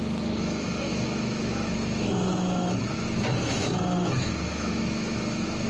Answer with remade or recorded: remade